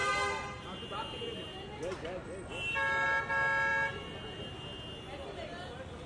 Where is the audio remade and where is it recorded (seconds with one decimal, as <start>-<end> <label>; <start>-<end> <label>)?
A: 0.0-6.1 recorded